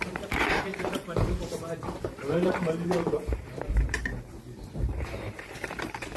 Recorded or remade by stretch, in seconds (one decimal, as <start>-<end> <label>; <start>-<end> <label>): 0.0-6.2 remade